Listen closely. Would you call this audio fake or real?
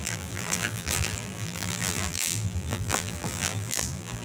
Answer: fake